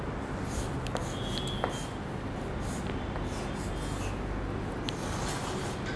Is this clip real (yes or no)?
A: yes